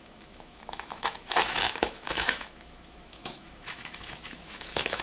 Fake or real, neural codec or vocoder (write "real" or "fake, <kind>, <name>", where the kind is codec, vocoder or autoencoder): fake, autoencoder, DAC-VAE